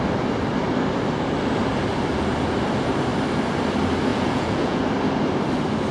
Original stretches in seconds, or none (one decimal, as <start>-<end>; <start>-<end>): 0.0-4.1; 4.8-5.9